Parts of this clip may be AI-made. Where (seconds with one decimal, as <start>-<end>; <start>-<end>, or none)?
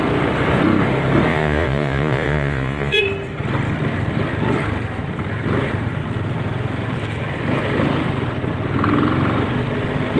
1.3-3.0